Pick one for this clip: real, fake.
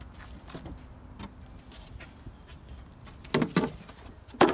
real